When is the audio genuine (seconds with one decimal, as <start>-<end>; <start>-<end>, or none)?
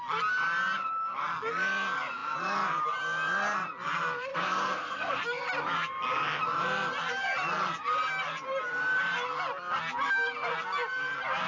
0.0-4.3; 5.2-11.5